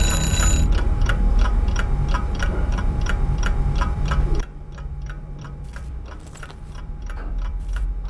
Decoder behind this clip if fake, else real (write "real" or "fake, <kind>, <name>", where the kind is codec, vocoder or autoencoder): fake, vocoder, BigVGAN v2